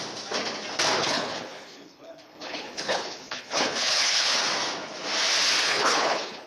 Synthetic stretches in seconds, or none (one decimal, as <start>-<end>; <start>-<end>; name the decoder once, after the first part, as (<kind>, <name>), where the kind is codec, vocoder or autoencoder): 1.0-4.4 (codec, HILCodec); 5.6-6.5